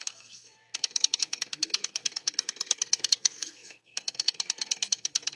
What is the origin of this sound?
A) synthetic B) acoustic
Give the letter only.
A